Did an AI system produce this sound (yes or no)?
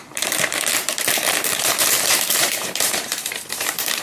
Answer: yes